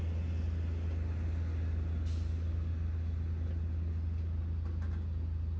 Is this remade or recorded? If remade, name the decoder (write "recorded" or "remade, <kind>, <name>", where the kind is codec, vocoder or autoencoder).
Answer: recorded